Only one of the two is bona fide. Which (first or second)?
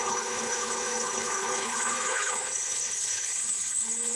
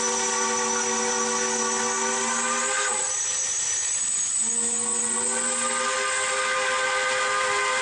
second